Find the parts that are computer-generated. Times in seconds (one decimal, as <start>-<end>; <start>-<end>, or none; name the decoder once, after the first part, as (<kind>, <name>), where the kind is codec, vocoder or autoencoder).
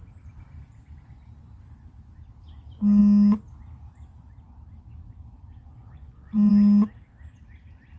5.8-6.5 (vocoder, Vocos)